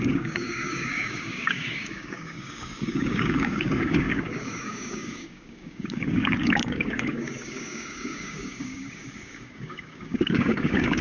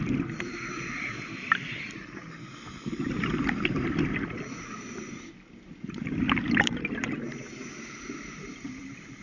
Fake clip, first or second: first